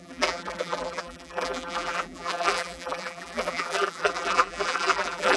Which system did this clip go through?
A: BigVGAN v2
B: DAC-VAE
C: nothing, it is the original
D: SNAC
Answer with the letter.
A